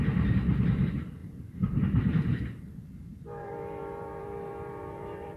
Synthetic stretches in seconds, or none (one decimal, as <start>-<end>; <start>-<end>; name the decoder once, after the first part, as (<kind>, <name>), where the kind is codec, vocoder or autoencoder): 0.0-5.4 (vocoder, BigVGAN v2)